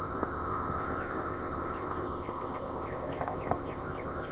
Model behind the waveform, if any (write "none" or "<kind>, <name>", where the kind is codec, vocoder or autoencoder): codec, ZipCodec